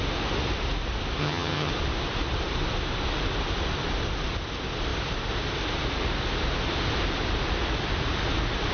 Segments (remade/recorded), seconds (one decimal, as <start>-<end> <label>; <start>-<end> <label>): 0.0-1.2 recorded; 1.2-1.7 remade; 1.7-8.7 recorded